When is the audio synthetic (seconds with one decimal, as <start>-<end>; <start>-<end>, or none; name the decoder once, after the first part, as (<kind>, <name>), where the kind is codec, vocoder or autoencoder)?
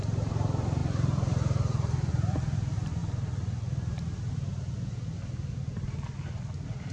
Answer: 0.0-3.0 (vocoder, BigVGAN v2); 5.5-6.9